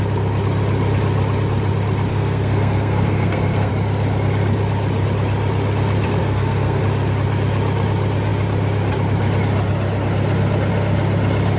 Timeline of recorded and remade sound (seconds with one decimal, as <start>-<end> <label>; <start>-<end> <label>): 0.0-2.1 recorded; 2.1-3.7 remade; 3.7-6.2 recorded; 6.2-6.8 remade; 6.8-11.6 recorded